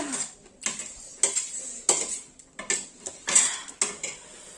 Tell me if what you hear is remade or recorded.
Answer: recorded